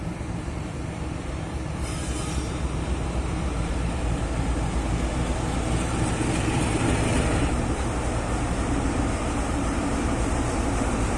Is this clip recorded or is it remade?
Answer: remade